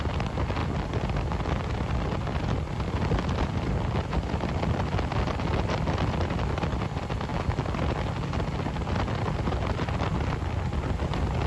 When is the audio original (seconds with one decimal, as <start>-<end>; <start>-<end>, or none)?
0.0-11.5